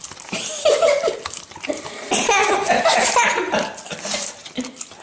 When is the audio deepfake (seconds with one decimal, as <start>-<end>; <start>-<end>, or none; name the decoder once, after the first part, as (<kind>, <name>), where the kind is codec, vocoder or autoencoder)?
none

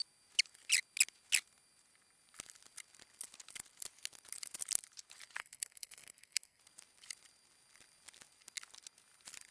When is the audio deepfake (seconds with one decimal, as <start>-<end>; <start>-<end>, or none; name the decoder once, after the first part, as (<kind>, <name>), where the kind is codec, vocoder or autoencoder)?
5.4-6.6 (codec, SNAC)